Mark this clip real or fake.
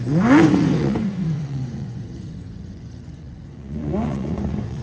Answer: fake